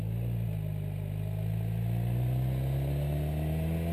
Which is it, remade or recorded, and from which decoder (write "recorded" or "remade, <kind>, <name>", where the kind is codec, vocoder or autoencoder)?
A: recorded